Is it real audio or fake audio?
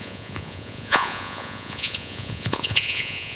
fake